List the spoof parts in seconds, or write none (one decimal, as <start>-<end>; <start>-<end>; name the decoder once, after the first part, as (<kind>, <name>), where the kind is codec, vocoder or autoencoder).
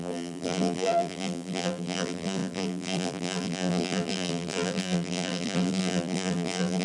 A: 0.0-6.8 (vocoder, BigVGAN v2)